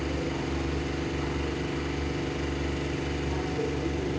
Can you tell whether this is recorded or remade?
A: recorded